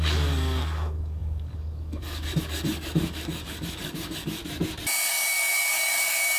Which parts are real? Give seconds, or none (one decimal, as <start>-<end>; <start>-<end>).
4.4-5.1